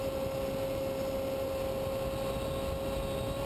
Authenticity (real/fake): real